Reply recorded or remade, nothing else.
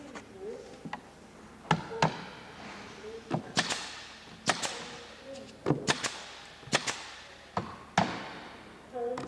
recorded